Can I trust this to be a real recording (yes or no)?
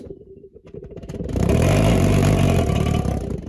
yes